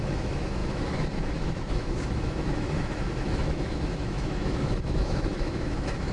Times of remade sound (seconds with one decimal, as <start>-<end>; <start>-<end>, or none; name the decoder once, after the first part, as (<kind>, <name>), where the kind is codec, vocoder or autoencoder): 0.0-6.1 (autoencoder, DAC-VAE)